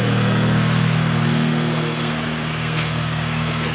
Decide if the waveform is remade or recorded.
remade